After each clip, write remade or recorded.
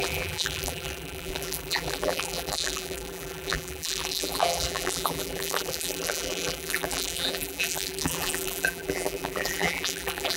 remade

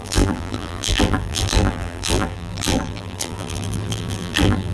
remade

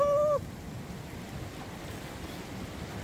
recorded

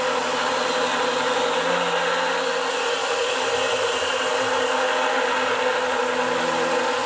recorded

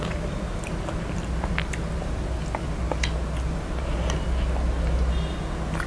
recorded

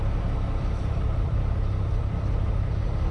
remade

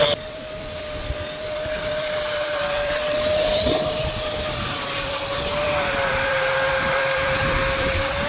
remade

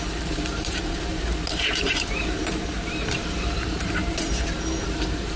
remade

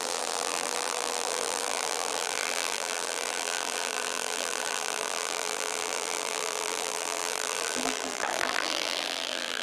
remade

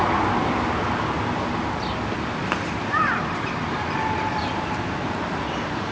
recorded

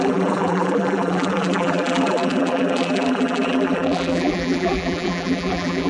remade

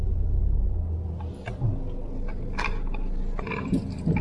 recorded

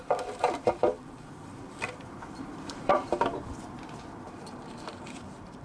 remade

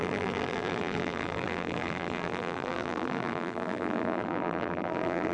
remade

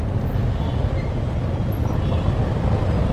recorded